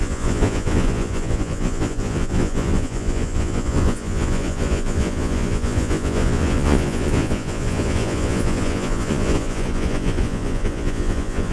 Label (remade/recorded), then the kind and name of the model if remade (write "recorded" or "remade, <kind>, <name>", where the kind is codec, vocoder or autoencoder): remade, vocoder, Vocos